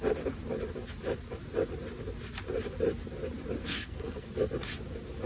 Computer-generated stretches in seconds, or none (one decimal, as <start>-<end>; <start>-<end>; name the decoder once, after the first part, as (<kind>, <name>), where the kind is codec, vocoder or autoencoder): 3.6-4.3 (codec, SNAC)